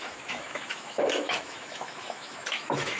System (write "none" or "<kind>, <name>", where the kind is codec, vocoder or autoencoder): autoencoder, DAC-VAE